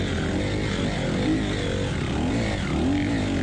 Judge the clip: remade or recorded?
recorded